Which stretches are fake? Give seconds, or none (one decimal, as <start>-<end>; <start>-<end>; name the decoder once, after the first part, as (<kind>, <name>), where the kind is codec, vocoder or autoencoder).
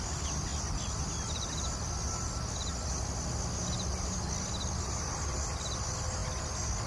none